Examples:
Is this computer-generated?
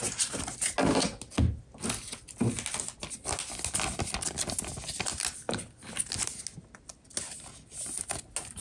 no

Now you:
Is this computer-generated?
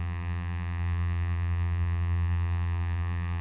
yes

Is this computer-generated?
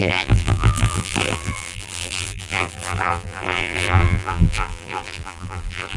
yes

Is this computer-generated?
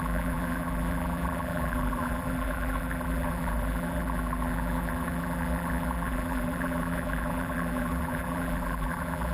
yes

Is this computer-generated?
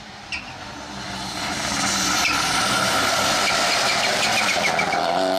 no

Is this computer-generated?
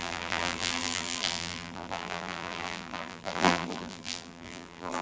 yes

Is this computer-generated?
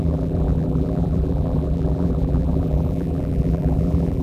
yes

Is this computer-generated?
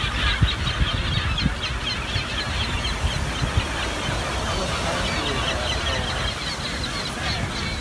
no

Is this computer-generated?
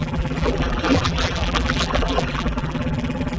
yes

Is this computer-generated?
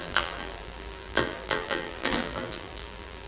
yes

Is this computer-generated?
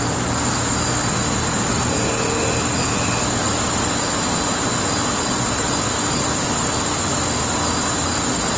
no